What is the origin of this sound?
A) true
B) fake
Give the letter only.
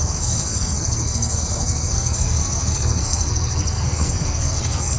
B